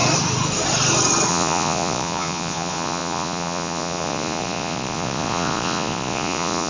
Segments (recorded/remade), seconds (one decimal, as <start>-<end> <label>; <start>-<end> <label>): 0.0-1.3 recorded; 1.3-6.7 remade